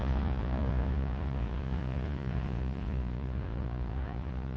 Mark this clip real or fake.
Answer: fake